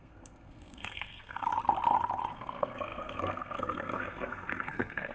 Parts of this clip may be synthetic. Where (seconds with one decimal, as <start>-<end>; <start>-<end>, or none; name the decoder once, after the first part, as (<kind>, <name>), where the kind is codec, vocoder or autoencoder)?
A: 0.0-1.5 (codec, SNAC); 2.3-5.1